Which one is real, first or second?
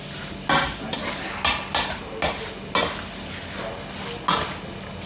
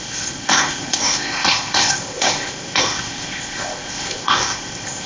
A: first